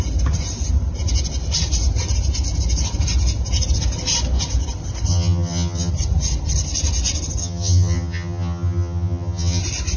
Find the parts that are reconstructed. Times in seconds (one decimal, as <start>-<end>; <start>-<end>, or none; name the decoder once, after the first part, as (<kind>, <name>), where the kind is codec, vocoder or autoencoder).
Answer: 5.1-5.9 (vocoder, HiFi-GAN); 7.4-9.6